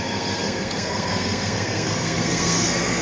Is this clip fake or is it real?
fake